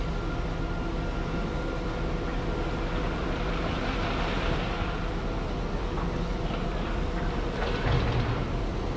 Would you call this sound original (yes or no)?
yes